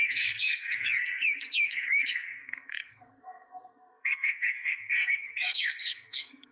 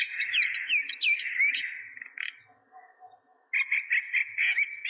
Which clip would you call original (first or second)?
second